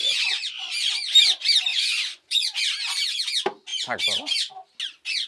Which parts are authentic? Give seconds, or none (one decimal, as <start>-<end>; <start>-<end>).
0.0-1.7; 2.6-5.3